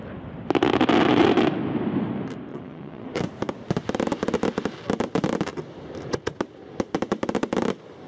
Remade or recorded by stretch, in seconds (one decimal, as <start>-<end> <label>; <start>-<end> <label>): 0.0-2.5 recorded; 2.5-3.1 remade; 3.1-8.1 recorded